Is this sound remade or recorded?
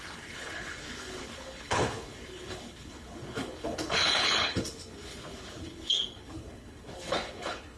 remade